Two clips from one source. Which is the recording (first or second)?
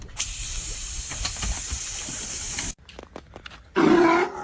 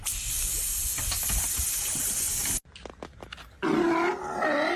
second